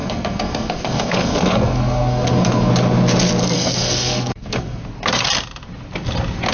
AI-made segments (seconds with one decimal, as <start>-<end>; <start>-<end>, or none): 0.0-2.7; 3.4-4.8